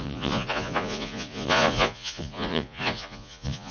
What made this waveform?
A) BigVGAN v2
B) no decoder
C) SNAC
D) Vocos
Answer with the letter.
D